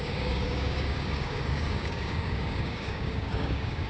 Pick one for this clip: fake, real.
fake